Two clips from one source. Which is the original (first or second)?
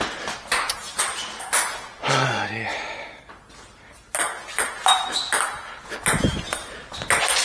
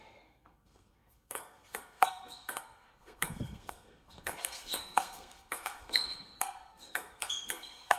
first